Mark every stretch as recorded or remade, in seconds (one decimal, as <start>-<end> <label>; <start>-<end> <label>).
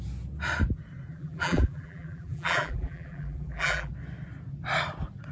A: 0.0-1.1 recorded; 1.1-3.9 remade; 3.9-5.3 recorded